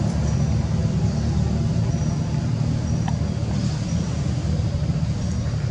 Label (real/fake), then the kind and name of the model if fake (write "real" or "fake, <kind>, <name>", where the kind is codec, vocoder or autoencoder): real